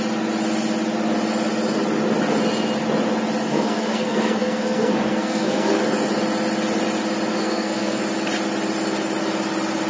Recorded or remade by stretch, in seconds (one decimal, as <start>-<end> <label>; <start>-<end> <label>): 0.0-3.5 recorded; 3.5-5.8 remade; 5.8-7.3 recorded; 7.3-8.0 remade; 8.0-9.9 recorded